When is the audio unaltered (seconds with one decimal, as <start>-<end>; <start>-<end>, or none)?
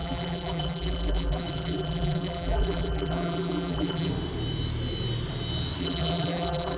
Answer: 4.1-5.8